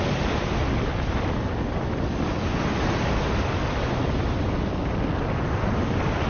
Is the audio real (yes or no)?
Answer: yes